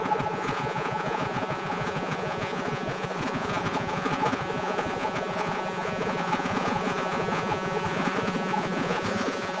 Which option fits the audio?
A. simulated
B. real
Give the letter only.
A